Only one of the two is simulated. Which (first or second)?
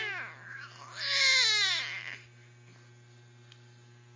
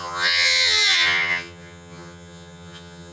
second